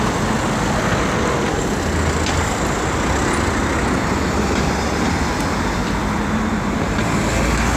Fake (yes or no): no